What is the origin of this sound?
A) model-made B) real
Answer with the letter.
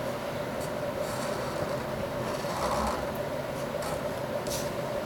A